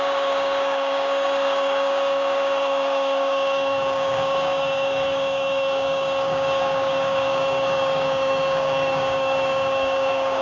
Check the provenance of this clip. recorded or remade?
remade